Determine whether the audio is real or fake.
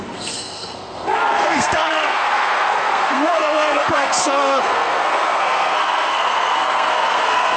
fake